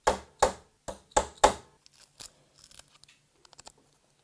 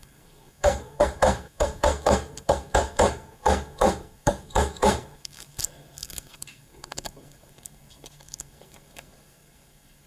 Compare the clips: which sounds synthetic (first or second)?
second